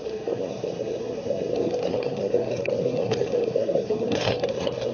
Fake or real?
fake